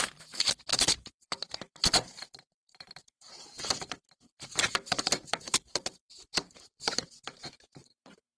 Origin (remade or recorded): remade